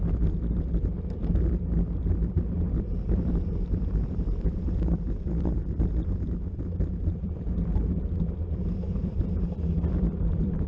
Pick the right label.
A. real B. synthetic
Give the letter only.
B